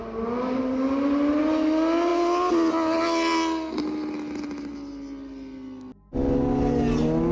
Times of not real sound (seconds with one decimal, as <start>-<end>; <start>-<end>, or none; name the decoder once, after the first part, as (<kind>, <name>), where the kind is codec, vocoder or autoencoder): none